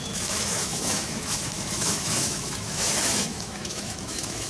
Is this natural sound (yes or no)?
no